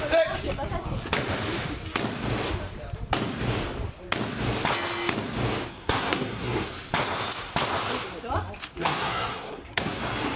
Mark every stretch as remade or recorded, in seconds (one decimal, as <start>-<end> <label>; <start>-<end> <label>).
0.0-5.7 recorded; 5.7-6.7 remade; 6.7-8.8 recorded; 8.8-10.0 remade; 10.0-10.4 recorded